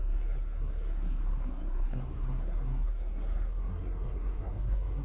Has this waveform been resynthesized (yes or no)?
yes